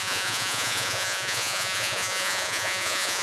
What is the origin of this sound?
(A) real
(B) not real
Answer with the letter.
B